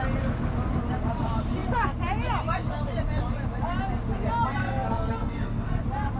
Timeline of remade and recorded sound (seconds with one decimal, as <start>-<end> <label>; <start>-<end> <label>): 0.0-4.6 recorded; 4.6-5.8 remade; 5.8-6.2 recorded